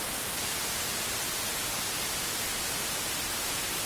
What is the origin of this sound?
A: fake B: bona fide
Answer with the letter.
B